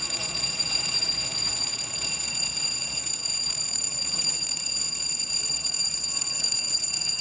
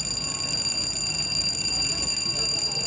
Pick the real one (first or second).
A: second